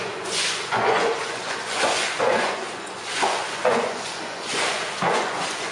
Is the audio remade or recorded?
remade